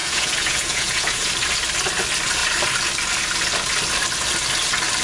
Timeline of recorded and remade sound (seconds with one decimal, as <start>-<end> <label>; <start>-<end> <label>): 0.0-1.3 remade; 1.3-5.0 recorded